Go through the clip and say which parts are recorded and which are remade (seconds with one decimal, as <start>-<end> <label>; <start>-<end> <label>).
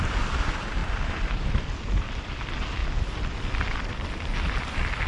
0.0-5.1 recorded